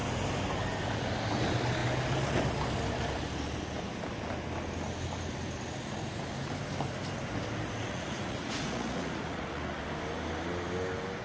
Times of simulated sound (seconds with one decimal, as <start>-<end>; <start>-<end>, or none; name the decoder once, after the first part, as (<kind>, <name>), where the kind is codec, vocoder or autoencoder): 7.8-9.7 (vocoder, Vocos)